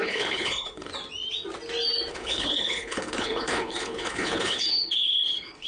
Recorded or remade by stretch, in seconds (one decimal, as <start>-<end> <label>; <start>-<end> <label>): 0.0-0.9 remade; 0.9-2.1 recorded; 2.1-5.7 remade